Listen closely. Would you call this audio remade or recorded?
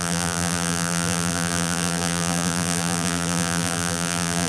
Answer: remade